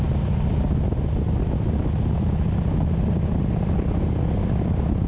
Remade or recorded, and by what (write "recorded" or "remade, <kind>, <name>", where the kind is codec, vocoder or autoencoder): recorded